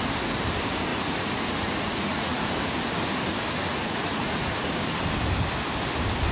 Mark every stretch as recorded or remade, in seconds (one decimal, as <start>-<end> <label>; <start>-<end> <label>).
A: 0.0-0.9 recorded; 0.9-2.4 remade; 2.4-3.7 recorded; 3.7-4.7 remade; 4.7-6.3 recorded